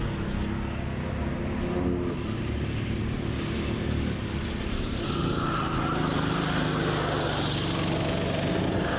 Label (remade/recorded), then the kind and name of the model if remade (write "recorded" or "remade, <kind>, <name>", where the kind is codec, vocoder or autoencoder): recorded